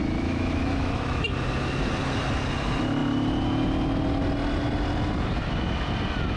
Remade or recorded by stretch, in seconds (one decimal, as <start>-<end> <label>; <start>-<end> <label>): 0.0-1.2 remade; 1.2-6.4 recorded